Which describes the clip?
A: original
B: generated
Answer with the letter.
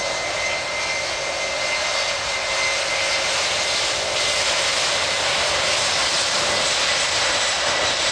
A